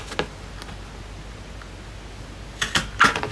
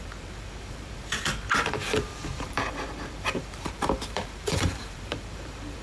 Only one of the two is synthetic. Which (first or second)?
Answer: second